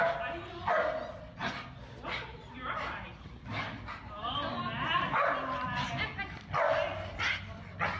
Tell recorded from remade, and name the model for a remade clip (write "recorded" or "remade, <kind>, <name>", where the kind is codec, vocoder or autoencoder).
recorded